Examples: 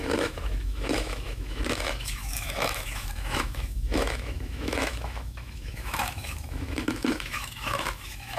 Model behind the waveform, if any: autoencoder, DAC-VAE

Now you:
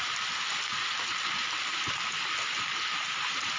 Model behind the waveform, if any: none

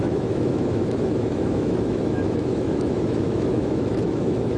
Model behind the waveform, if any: autoencoder, DAC-VAE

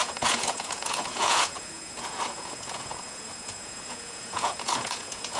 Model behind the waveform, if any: vocoder, Vocos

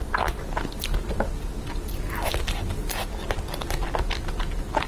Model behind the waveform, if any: none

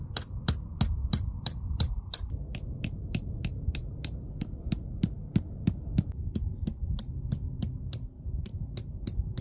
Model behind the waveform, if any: none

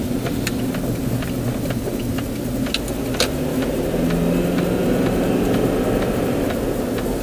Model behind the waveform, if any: none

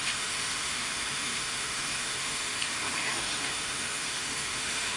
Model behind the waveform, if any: autoencoder, DAC-VAE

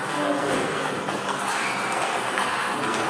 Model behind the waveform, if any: codec, SNAC